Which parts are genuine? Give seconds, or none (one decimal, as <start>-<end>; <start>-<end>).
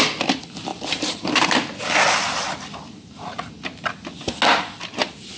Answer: 0.0-5.4